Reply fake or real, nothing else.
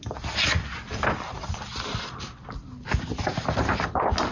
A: real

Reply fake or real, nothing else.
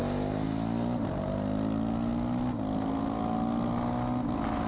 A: real